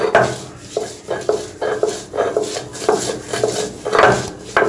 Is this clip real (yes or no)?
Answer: yes